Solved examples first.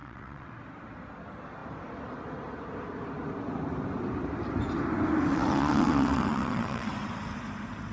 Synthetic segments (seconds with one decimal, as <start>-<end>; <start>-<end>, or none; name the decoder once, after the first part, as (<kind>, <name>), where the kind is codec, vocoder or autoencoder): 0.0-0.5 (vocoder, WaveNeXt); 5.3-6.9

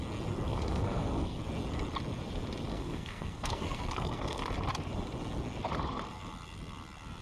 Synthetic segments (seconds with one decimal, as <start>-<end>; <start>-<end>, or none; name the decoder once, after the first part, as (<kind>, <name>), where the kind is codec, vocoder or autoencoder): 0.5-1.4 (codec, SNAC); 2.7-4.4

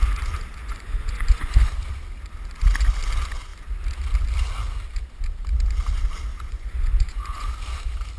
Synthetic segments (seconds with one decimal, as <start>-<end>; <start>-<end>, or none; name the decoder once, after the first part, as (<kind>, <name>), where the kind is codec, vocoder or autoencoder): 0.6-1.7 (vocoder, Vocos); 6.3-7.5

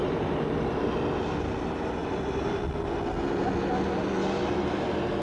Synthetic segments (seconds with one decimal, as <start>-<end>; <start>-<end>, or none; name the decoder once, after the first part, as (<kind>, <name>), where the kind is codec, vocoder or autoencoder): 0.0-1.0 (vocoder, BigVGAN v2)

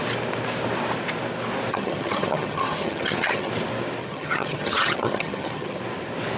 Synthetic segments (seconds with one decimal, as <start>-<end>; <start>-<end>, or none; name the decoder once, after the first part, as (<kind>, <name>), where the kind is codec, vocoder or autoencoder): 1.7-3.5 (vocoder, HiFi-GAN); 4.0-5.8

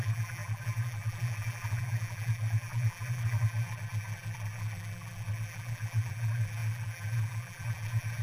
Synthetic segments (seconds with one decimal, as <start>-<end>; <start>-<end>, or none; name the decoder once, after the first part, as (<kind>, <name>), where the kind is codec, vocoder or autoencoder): 0.0-8.2 (vocoder, BigVGAN v2)

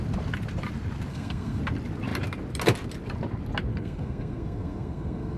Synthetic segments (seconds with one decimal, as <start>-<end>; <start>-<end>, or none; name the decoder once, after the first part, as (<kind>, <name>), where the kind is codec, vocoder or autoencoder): 1.1-1.6 (codec, SNAC); 3.7-5.4

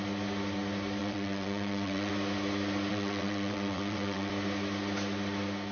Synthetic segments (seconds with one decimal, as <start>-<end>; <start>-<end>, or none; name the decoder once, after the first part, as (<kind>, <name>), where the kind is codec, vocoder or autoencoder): 1.0-2.1 (vocoder, WaveNeXt); 2.9-4.3